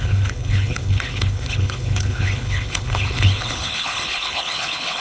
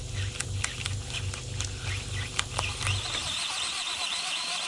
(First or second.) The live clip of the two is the second